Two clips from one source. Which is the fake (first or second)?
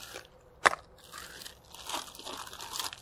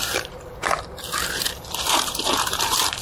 second